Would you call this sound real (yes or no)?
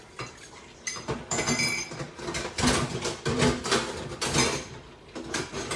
yes